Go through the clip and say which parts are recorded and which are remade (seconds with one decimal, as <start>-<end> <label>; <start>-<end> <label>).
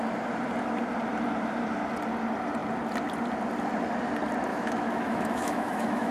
0.0-4.5 recorded; 4.5-6.1 remade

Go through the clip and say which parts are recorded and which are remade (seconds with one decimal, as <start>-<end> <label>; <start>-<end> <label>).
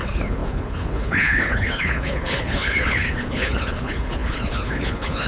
0.0-5.3 remade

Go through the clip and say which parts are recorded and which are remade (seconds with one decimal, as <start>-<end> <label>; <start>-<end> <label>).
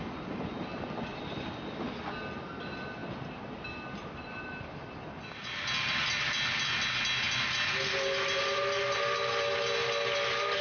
0.0-10.6 recorded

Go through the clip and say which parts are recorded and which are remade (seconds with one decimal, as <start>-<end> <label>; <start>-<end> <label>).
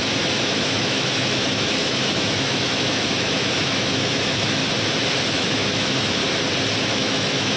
0.0-4.6 remade; 4.6-5.3 recorded; 5.3-6.2 remade; 6.2-6.9 recorded; 6.9-7.6 remade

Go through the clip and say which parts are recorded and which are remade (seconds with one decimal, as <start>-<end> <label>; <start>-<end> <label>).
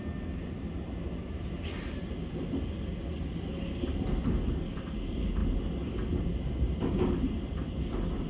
0.0-8.3 recorded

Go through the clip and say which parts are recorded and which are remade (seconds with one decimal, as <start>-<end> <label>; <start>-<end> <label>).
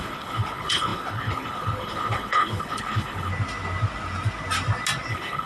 0.0-3.3 remade; 3.3-5.1 recorded; 5.1-5.5 remade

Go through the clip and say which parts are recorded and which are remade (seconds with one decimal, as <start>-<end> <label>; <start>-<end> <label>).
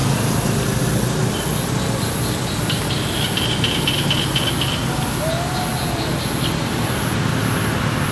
0.0-8.1 recorded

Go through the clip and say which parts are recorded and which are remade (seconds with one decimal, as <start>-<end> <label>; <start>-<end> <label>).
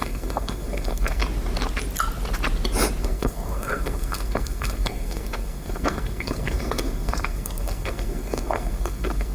0.0-1.2 remade; 1.2-3.0 recorded; 3.0-9.3 remade